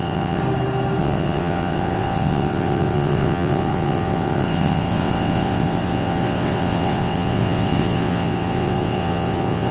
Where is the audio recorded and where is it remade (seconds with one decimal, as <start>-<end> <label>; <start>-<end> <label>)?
0.0-0.4 remade; 0.4-1.0 recorded; 1.0-9.7 remade